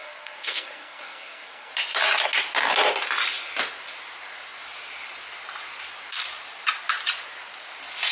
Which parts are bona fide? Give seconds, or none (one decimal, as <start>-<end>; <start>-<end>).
1.7-8.1